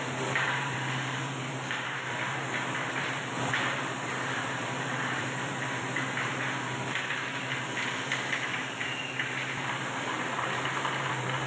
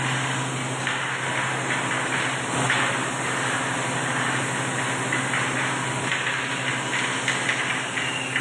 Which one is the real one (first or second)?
second